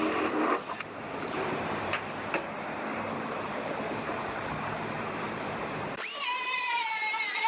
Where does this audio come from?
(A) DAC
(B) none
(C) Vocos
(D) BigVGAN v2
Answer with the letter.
D